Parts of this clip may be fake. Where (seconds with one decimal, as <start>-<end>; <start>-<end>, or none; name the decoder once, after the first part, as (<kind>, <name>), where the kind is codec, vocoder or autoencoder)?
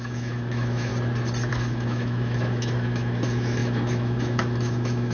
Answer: 0.0-0.9 (autoencoder, DAC-VAE); 1.5-5.1